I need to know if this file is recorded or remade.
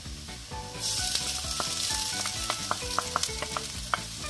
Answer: recorded